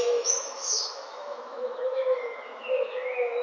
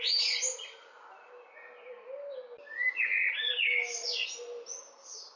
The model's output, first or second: first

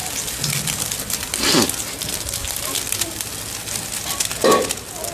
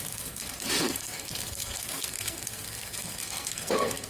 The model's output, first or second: second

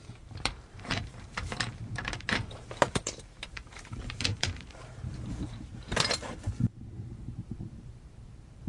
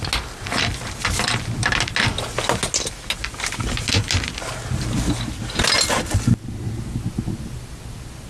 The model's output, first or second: first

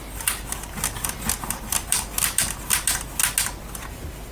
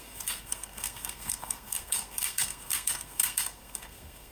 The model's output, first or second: second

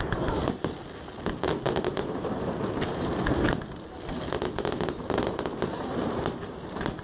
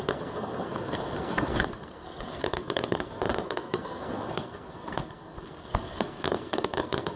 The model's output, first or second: second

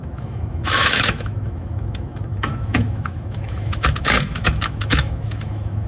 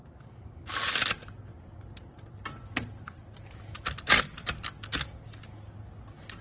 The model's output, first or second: first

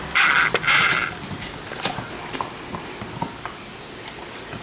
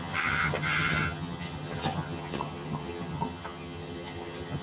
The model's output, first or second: second